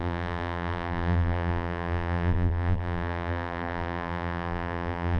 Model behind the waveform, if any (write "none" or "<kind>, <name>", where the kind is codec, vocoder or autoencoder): vocoder, BigVGAN v2